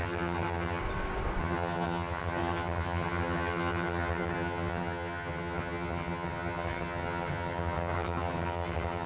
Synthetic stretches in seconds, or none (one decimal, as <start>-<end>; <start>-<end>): 0.0-0.8; 1.4-9.1

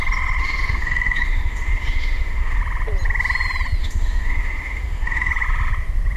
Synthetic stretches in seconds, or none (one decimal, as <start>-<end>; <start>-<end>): 0.4-2.6; 3.8-5.3